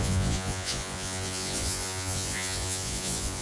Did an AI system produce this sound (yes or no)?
yes